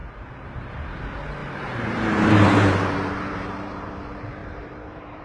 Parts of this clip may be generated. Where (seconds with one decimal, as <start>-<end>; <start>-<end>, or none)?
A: 0.0-0.9; 1.4-3.9; 4.4-5.2